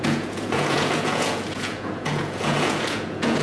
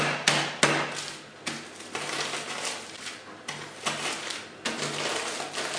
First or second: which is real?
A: second